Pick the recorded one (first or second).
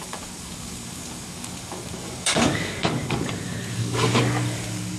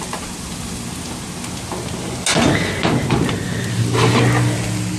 second